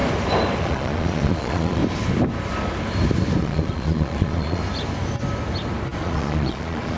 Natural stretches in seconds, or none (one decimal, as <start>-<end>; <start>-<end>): 0.0-0.6; 1.8-3.4; 4.6-6.0